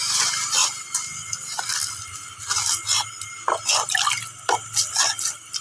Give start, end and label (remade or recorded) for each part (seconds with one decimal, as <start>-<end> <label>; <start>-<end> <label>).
0.0-5.6 recorded